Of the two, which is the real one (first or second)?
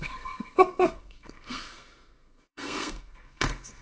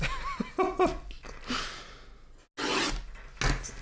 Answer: second